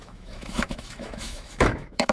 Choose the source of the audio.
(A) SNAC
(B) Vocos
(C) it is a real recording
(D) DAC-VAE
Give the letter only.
D